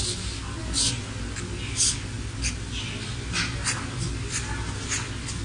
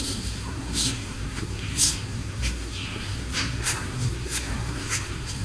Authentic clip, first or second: first